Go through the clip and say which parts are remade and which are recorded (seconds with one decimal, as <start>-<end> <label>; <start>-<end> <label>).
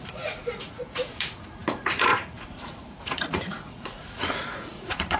0.0-5.2 remade